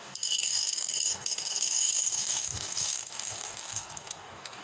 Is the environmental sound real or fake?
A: fake